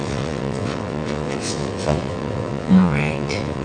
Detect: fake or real fake